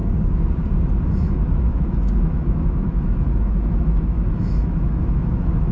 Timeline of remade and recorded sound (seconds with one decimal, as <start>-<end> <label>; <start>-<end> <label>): 0.0-1.2 recorded; 1.2-5.7 remade